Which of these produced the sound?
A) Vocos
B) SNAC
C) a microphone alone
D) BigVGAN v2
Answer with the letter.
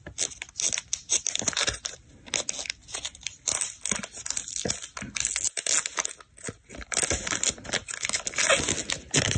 C